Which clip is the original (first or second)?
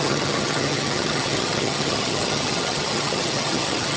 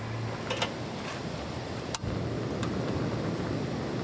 second